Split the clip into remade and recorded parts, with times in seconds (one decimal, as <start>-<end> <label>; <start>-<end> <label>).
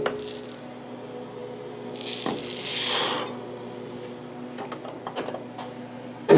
0.0-6.4 recorded